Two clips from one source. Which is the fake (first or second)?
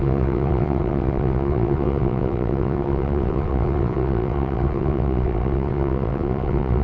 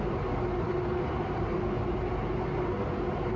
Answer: first